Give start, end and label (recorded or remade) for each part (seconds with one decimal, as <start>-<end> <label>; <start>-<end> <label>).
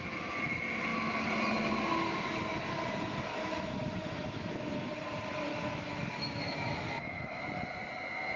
0.0-3.3 recorded; 3.3-4.9 remade; 4.9-5.5 recorded; 5.5-7.4 remade; 7.4-8.4 recorded